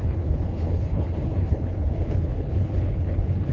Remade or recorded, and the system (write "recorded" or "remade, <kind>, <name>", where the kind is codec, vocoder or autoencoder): remade, codec, HILCodec